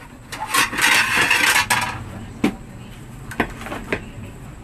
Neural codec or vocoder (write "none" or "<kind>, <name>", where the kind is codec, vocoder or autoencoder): none